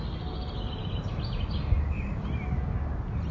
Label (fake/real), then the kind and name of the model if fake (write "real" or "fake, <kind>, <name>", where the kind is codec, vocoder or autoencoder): real